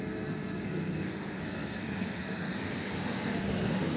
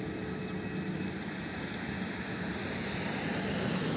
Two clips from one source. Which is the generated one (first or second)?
first